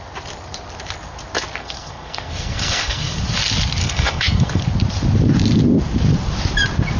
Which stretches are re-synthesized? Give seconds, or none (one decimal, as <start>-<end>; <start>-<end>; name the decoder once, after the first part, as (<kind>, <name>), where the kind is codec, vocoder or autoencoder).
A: 1.6-3.2 (codec, SNAC); 3.8-4.6